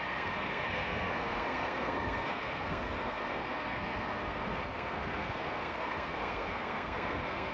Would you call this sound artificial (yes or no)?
yes